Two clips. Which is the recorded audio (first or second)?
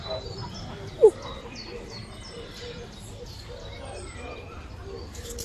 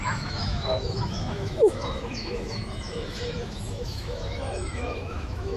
first